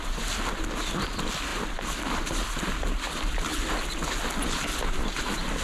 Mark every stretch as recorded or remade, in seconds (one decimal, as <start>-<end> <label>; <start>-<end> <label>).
0.0-1.5 remade; 1.5-2.7 recorded; 2.7-3.5 remade; 3.5-4.9 recorded; 4.9-5.6 remade